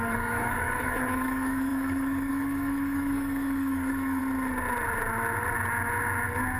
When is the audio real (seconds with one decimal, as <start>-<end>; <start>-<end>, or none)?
4.2-6.6